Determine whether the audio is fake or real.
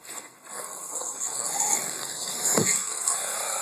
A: fake